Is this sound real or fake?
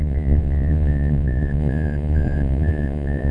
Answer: fake